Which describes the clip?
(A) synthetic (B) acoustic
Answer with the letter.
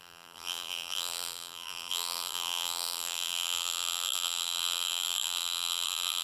A